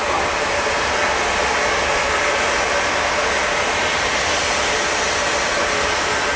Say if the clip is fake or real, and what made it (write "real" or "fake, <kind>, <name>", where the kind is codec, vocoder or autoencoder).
real